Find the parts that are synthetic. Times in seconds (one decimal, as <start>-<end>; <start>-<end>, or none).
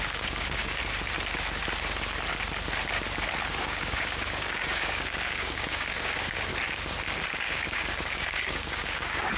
0.0-0.8; 3.5-6.5; 7.2-9.4